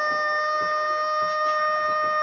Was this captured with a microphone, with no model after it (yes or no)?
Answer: yes